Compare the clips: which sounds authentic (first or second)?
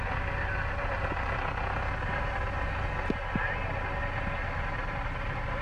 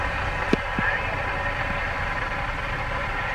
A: first